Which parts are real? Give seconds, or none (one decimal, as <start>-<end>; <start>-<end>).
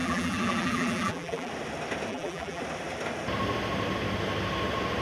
1.5-2.1; 2.6-5.0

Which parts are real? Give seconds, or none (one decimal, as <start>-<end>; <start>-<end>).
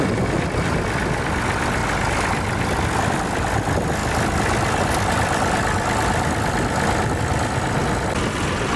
0.0-8.8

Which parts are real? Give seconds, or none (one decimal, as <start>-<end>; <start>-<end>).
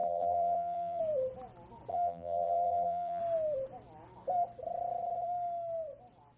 1.0-1.9; 3.2-6.4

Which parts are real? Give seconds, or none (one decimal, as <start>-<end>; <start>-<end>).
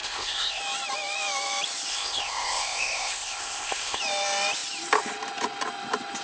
0.6-1.9; 4.0-6.2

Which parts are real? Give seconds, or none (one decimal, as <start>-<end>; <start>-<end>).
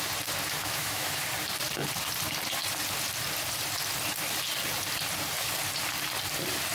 0.0-0.6; 1.2-6.7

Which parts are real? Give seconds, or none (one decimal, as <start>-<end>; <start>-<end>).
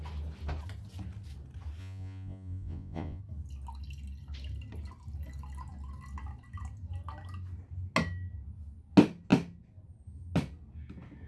0.0-1.8; 3.2-11.3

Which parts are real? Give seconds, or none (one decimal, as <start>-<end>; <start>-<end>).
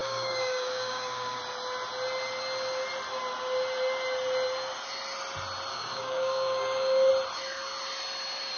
1.4-5.7; 7.1-8.6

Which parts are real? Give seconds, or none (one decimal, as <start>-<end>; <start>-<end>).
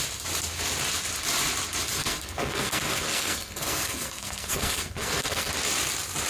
0.0-1.9; 5.5-6.3